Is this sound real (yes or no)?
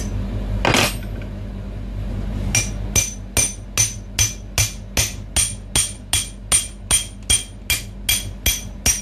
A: yes